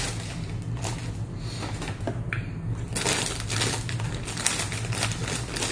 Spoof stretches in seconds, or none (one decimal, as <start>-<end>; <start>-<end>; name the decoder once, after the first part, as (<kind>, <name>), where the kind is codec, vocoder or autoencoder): none